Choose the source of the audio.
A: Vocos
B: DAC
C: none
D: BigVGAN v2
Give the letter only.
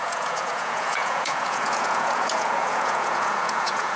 A